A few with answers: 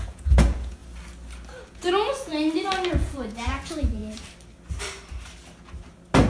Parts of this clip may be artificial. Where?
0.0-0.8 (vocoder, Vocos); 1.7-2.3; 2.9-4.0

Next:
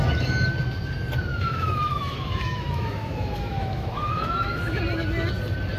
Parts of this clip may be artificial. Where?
1.3-4.8 (autoencoder, DAC-VAE)

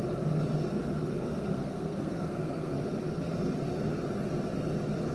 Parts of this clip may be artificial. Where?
1.2-2.8 (codec, SNAC)

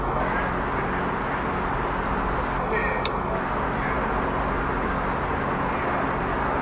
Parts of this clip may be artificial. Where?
none

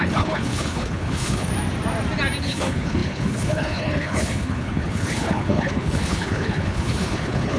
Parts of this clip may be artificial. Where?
0.0-1.5 (codec, HILCodec); 2.4-7.6

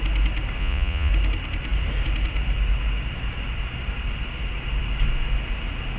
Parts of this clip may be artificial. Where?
0.6-1.1 (vocoder, Vocos)